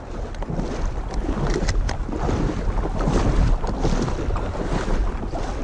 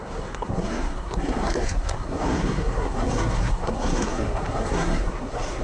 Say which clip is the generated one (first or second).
second